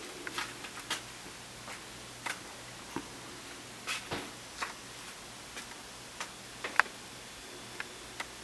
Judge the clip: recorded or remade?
recorded